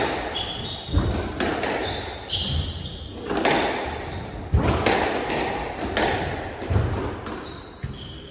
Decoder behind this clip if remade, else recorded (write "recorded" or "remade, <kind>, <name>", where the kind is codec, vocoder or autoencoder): recorded